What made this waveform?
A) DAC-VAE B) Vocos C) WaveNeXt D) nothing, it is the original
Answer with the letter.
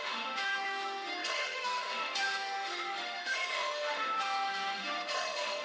A